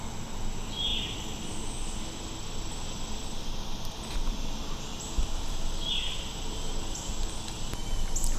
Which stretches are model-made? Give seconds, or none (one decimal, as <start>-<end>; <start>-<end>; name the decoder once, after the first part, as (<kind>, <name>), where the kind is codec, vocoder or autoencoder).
none